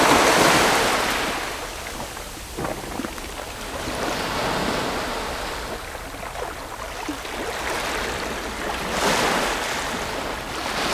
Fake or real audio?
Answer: real